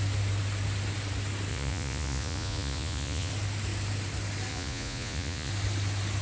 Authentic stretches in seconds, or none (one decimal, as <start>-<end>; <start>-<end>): 0.0-1.5; 3.3-4.5; 5.5-6.2